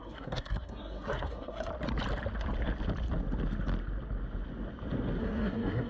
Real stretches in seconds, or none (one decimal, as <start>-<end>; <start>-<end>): 1.7-5.2